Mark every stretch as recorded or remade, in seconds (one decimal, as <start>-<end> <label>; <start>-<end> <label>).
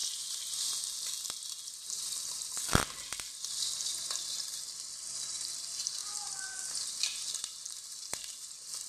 0.0-8.9 recorded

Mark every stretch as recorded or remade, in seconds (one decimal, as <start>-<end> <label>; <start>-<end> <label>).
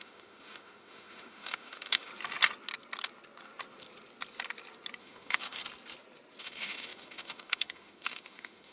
0.0-2.1 remade; 2.1-5.0 recorded; 5.0-5.6 remade; 5.6-6.4 recorded; 6.4-8.7 remade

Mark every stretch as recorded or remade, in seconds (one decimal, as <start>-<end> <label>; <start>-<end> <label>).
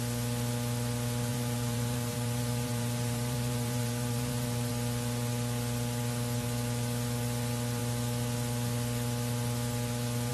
0.0-1.3 recorded; 1.3-4.7 remade; 4.7-10.3 recorded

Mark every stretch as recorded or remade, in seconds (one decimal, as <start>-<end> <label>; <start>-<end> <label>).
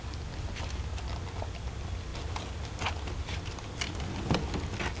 0.0-5.0 recorded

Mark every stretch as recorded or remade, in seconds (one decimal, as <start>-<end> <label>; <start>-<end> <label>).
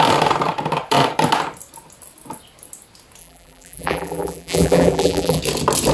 0.0-3.2 recorded; 3.2-5.4 remade; 5.4-5.9 recorded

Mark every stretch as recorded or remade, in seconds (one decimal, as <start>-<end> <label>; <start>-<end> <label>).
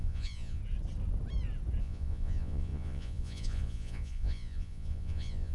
0.0-0.6 remade; 0.6-1.8 recorded; 1.8-5.5 remade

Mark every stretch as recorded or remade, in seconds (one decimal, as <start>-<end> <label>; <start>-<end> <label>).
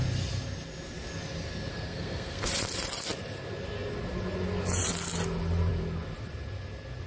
0.0-1.7 recorded; 1.7-2.5 remade; 2.5-7.1 recorded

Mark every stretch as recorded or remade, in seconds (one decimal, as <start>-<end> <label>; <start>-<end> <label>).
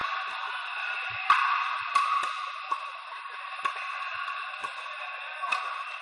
0.0-6.0 recorded